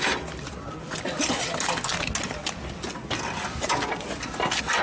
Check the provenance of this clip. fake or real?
real